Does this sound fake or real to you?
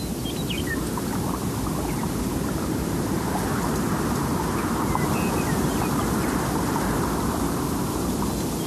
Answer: real